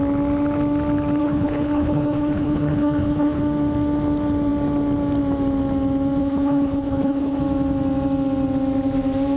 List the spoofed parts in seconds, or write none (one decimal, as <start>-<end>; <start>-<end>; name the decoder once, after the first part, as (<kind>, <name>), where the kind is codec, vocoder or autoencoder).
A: 1.2-3.4 (codec, HILCodec); 6.2-7.4